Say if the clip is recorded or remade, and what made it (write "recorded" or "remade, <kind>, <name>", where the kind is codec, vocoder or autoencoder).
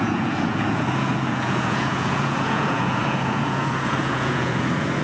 remade, vocoder, Vocos